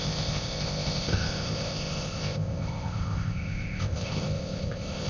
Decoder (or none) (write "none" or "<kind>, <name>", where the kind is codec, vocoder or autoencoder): codec, ZipCodec